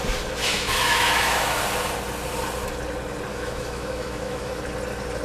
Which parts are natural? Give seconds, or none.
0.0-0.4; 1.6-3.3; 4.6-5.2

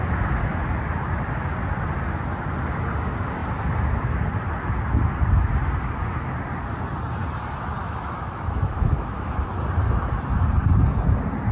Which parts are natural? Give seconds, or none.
0.0-7.8; 9.5-11.5